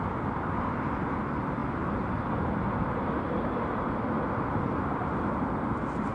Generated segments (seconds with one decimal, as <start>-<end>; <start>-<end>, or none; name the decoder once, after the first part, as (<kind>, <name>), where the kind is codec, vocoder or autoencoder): none